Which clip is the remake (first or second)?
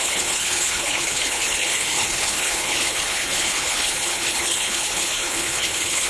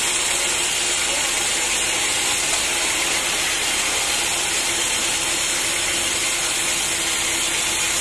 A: first